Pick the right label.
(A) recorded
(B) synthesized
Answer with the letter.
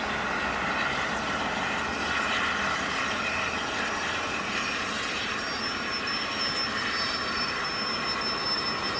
A